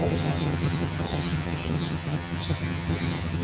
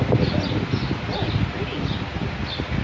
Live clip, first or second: second